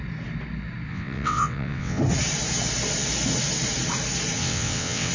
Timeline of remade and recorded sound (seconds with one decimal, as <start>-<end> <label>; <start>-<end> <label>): 0.0-0.9 recorded; 0.9-2.0 remade; 2.0-4.4 recorded; 4.4-5.1 remade